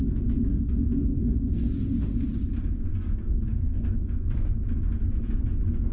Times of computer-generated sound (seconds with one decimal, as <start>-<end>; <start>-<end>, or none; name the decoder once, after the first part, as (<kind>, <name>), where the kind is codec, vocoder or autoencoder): 0.5-1.7 (codec, SNAC); 2.9-4.6